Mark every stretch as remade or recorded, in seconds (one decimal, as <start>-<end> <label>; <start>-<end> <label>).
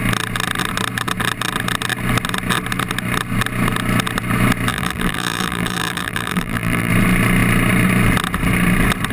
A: 0.0-4.7 recorded; 4.7-6.9 remade; 6.9-9.1 recorded